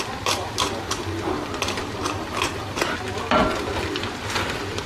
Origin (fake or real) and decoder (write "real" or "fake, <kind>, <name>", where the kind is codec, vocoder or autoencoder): real